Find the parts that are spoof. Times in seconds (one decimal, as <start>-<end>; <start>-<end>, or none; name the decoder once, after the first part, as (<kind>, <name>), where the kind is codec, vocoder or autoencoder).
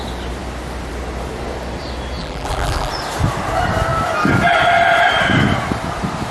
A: 2.2-2.9 (vocoder, BigVGAN v2)